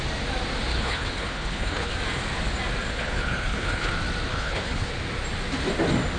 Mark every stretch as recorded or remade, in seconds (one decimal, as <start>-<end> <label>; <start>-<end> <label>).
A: 0.0-0.7 recorded; 0.7-1.9 remade; 1.9-2.9 recorded; 2.9-3.9 remade; 3.9-4.3 recorded; 4.3-4.9 remade; 4.9-6.2 recorded